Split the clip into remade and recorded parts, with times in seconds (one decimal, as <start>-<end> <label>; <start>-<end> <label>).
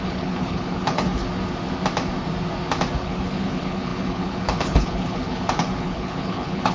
0.0-1.2 remade; 1.2-3.0 recorded; 3.0-6.7 remade